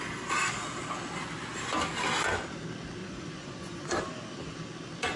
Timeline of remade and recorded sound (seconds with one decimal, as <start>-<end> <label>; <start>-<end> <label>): 0.0-3.0 recorded; 3.0-4.0 remade; 4.0-5.2 recorded